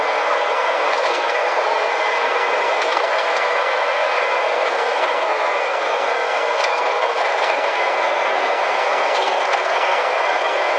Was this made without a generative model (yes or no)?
no